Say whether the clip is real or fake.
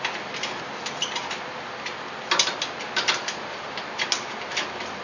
real